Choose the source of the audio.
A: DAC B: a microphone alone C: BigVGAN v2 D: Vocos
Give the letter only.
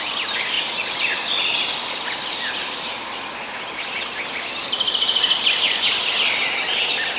B